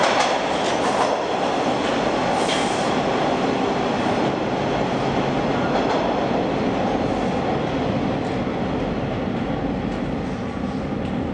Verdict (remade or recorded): recorded